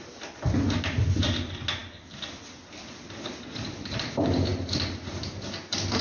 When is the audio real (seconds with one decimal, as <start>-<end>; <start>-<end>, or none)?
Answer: 0.0-6.0